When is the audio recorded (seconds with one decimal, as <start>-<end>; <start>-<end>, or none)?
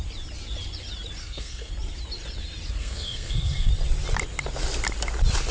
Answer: 0.0-1.2; 1.7-2.8; 3.7-5.5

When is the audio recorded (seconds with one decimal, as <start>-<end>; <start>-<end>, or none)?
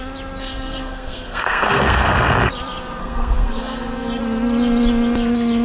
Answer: 0.0-0.4; 2.3-3.0; 4.2-5.6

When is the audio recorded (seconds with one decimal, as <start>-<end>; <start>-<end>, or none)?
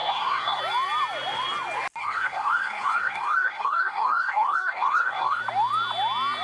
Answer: 0.6-2.0; 5.4-6.4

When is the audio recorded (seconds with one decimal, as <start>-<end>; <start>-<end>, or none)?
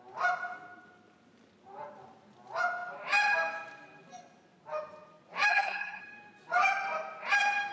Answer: 0.0-5.5; 6.0-7.7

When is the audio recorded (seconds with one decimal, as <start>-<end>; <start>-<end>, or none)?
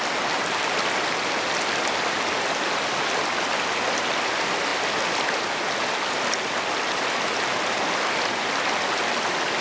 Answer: 0.0-9.6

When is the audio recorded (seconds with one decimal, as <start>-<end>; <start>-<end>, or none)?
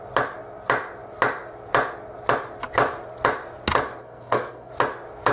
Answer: 0.0-4.0; 4.7-5.3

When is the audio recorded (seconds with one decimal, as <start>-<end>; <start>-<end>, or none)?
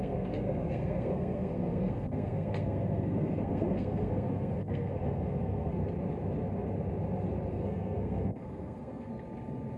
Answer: 5.8-7.5; 9.1-9.8